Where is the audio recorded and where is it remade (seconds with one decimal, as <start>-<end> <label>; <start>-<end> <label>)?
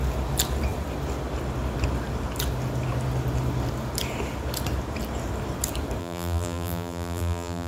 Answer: 0.0-6.0 recorded; 6.0-7.7 remade